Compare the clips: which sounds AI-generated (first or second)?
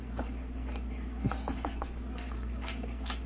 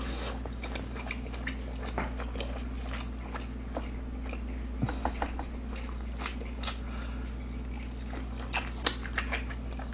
first